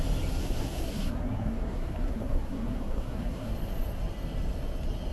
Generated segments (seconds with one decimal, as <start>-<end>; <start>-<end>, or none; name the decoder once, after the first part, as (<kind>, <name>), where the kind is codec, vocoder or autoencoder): 0.4-3.5 (codec, SNAC)